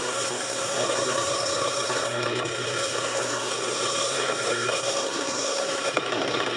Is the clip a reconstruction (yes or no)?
yes